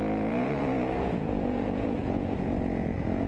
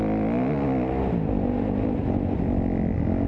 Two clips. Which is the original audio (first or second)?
second